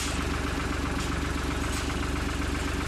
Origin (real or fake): real